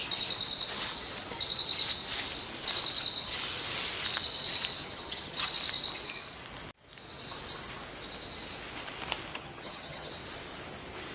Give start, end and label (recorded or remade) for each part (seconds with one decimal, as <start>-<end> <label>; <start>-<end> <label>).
0.0-4.8 recorded; 4.8-5.5 remade; 5.5-9.3 recorded; 9.3-10.1 remade; 10.1-11.1 recorded

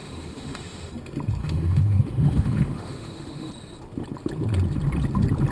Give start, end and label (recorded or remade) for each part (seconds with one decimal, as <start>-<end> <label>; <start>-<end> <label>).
0.0-0.9 remade; 0.9-1.4 recorded; 1.4-3.5 remade; 3.5-5.5 recorded